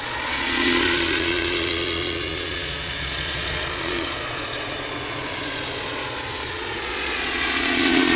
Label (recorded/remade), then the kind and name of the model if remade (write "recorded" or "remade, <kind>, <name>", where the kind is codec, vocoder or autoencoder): remade, vocoder, Vocos